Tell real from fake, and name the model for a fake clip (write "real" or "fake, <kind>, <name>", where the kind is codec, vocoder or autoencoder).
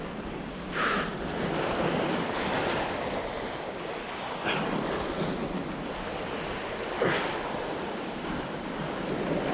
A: real